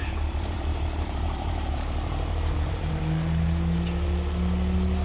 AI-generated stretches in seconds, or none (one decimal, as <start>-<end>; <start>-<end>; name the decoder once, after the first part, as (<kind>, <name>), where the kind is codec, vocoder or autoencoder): 0.0-3.0 (vocoder, BigVGAN v2)